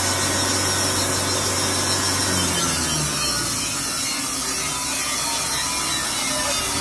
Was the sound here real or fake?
real